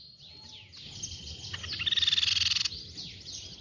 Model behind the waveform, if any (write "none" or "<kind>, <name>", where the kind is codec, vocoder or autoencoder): none